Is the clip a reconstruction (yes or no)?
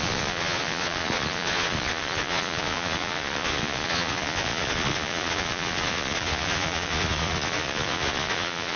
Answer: yes